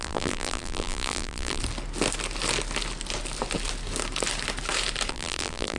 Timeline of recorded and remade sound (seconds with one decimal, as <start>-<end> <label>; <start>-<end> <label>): 0.0-1.6 remade; 1.6-5.1 recorded; 5.1-5.8 remade